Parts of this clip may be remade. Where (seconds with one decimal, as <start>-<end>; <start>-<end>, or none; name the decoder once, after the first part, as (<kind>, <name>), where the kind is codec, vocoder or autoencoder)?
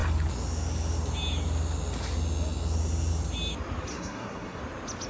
3.9-4.6 (codec, SNAC)